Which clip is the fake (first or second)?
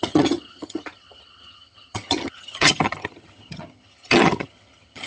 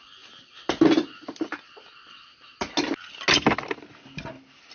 first